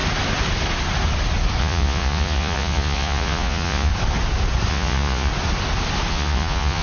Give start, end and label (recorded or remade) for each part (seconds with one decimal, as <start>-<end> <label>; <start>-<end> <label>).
0.0-1.6 recorded; 1.6-3.9 remade; 3.9-4.7 recorded; 4.7-5.3 remade; 5.3-6.1 recorded; 6.1-6.8 remade